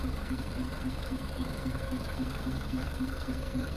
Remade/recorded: remade